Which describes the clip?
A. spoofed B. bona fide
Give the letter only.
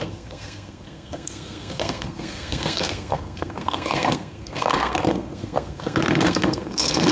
A